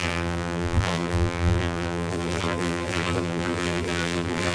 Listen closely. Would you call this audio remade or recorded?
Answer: remade